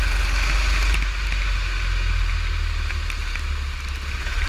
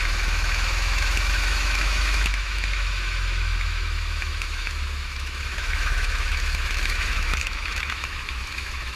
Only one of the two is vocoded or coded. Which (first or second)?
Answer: second